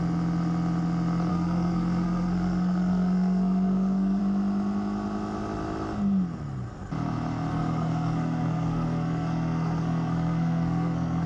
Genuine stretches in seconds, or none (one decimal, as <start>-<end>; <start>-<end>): 0.0-1.3; 4.2-7.5